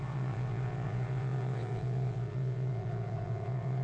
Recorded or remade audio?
remade